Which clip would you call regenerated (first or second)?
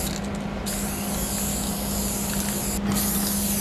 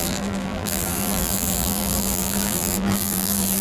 second